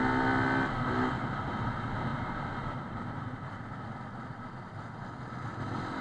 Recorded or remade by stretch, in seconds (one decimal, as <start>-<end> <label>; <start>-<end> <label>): 0.0-6.0 recorded